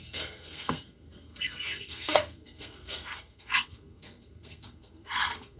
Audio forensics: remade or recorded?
remade